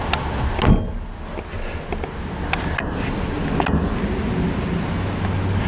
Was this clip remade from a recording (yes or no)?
no